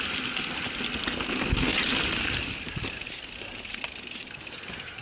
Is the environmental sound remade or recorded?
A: recorded